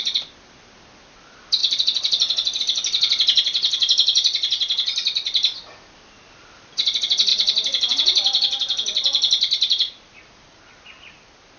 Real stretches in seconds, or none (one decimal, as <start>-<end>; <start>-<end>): 0.0-1.6; 2.6-7.3; 10.6-11.6